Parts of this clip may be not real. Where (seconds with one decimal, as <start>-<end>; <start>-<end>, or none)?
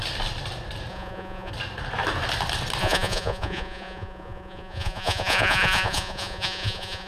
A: 0.9-1.5; 2.8-7.1